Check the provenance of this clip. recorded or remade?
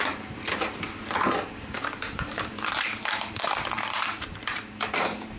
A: remade